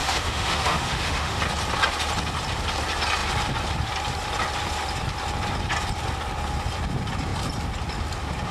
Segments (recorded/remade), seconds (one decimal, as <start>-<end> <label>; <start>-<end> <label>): 0.0-1.4 remade; 1.4-8.5 recorded